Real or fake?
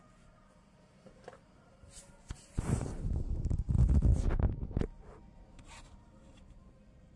fake